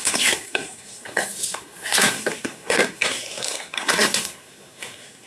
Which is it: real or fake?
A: fake